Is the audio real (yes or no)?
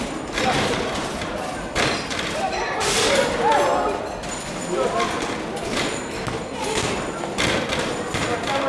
yes